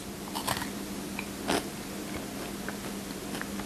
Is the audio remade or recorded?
recorded